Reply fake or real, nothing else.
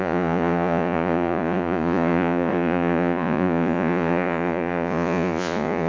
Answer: fake